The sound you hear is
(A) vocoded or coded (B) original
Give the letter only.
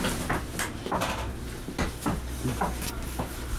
B